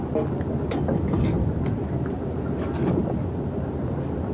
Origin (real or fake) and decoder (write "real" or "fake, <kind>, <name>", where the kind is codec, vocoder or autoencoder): real